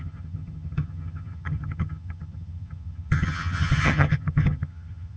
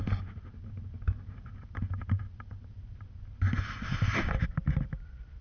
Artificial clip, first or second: first